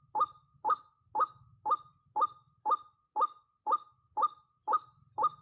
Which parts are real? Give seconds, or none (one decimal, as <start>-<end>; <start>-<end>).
0.0-5.4